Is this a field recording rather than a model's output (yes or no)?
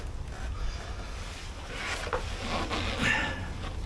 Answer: yes